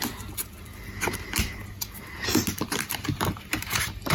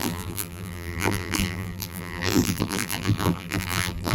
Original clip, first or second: first